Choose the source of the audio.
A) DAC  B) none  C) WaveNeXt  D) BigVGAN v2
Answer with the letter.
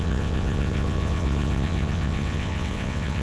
C